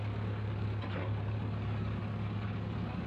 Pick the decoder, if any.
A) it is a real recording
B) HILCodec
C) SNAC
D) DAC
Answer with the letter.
D